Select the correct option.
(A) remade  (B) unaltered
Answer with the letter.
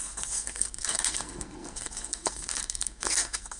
A